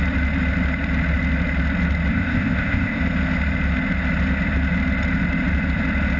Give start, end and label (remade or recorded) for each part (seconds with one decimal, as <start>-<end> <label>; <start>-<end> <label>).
0.0-2.1 recorded; 2.1-3.0 remade; 3.0-6.2 recorded